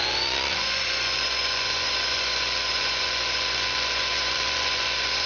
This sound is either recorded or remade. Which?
remade